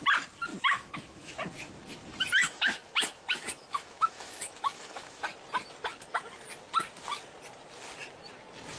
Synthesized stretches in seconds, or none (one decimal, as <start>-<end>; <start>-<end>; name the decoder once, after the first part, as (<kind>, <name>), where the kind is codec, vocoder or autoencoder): 0.5-1.3 (autoencoder, DAC-VAE); 2.4-5.2